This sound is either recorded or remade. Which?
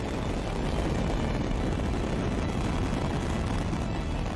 recorded